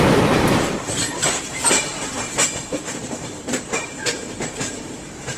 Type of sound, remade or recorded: remade